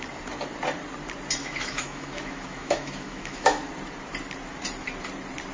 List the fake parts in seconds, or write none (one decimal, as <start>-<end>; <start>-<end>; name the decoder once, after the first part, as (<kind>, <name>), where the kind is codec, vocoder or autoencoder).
1.4-3.7 (autoencoder, DAC-VAE)